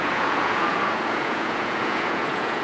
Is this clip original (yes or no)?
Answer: no